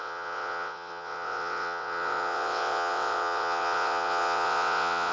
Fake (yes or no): yes